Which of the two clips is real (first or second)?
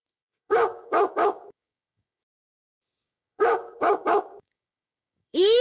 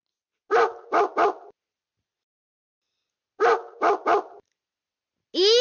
second